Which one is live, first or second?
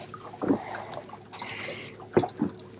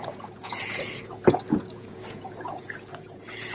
first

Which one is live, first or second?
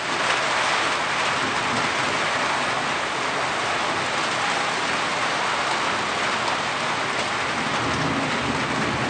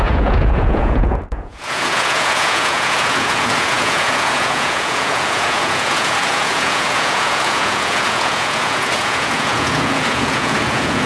first